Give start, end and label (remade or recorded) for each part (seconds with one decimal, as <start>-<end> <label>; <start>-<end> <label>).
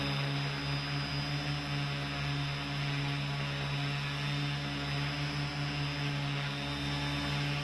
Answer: 0.0-7.6 recorded